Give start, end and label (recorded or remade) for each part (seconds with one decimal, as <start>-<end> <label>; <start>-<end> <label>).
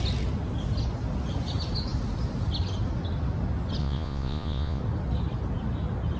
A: 0.0-3.8 recorded; 3.8-4.8 remade; 4.8-6.2 recorded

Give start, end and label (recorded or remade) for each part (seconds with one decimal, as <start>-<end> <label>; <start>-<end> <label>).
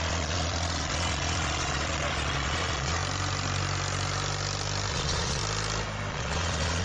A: 0.0-3.0 remade; 3.0-4.9 recorded; 4.9-5.4 remade; 5.4-6.1 recorded; 6.1-6.8 remade